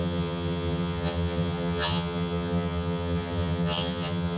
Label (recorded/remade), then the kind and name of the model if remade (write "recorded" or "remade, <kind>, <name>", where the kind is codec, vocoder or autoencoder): remade, vocoder, HiFi-GAN